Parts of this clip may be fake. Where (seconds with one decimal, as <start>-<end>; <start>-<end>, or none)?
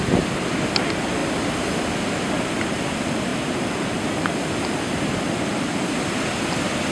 none